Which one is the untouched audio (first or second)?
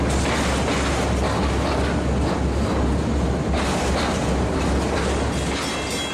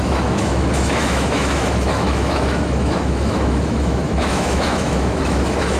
first